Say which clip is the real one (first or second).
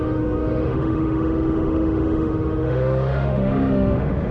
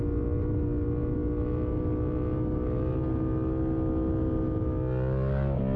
second